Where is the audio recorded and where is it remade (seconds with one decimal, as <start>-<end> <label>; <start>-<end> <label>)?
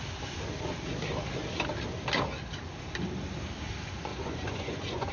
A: 0.0-4.1 recorded; 4.1-5.1 remade